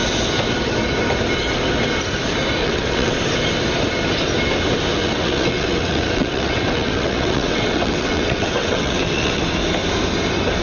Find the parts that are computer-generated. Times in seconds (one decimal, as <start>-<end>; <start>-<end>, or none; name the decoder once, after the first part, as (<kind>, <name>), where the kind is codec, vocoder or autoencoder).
2.6-3.2 (vocoder, WaveNeXt); 5.0-9.4